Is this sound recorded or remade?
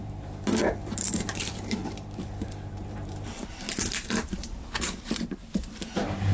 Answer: remade